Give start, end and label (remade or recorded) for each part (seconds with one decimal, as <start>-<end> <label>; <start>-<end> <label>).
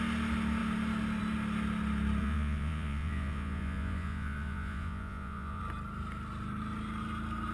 0.0-2.2 recorded; 2.2-5.6 remade; 5.6-7.5 recorded